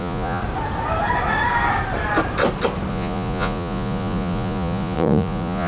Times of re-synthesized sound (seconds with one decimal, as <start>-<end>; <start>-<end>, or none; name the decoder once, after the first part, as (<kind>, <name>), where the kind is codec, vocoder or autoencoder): 0.0-0.4 (vocoder, Vocos); 2.9-5.7

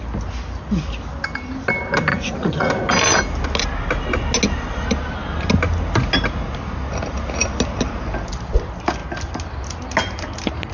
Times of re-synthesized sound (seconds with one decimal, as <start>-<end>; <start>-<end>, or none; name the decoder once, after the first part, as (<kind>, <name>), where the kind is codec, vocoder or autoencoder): 2.1-2.7 (vocoder, Vocos)